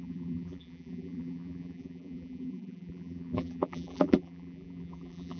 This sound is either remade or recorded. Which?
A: remade